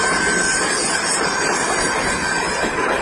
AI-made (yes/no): no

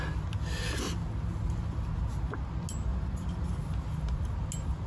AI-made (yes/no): no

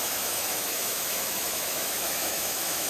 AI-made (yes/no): yes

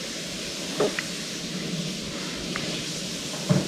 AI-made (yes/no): no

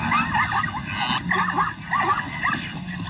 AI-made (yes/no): no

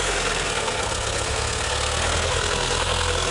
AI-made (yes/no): yes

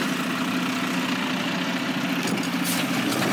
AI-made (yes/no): no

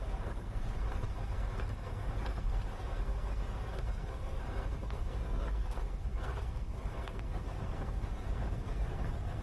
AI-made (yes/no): yes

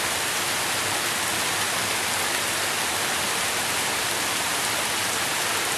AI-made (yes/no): no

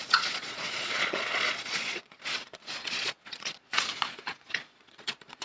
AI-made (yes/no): yes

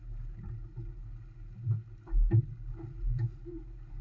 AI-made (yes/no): no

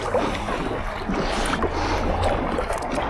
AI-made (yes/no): no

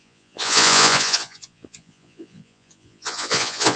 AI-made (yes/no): yes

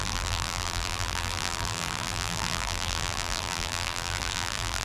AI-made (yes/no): yes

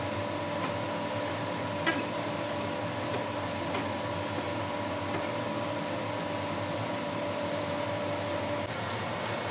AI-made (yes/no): no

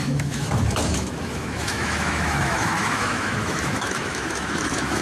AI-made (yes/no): yes